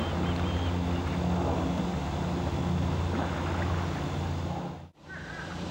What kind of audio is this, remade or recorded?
recorded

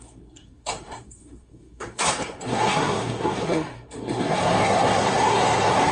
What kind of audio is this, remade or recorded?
remade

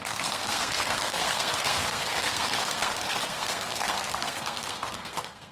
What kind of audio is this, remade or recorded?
remade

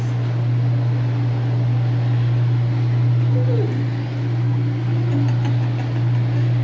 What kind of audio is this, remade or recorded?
recorded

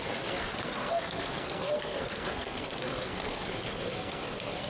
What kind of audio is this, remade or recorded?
remade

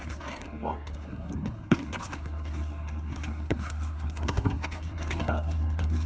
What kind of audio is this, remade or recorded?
remade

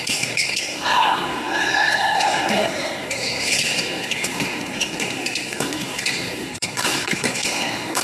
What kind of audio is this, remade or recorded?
remade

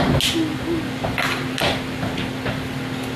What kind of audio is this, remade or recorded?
recorded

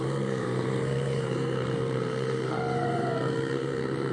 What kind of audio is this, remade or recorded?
remade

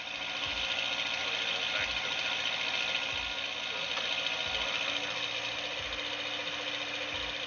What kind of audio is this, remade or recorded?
recorded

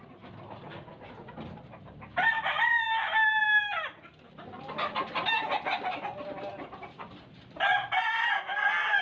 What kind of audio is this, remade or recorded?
recorded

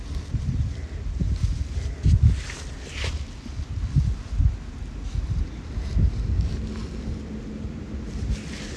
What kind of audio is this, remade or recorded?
recorded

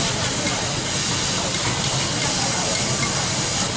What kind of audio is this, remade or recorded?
recorded